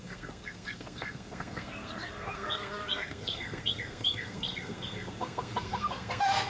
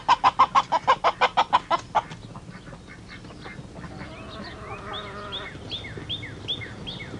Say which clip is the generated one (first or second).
first